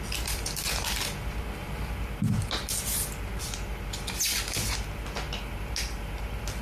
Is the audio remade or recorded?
recorded